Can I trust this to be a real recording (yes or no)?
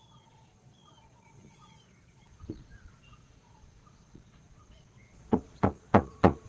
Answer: no